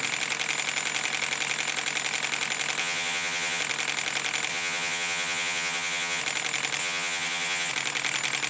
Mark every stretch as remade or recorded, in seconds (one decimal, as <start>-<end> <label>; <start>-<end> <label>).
0.0-2.8 recorded; 2.8-3.6 remade; 3.6-4.5 recorded; 4.5-6.2 remade; 6.2-6.8 recorded; 6.8-7.7 remade; 7.7-8.5 recorded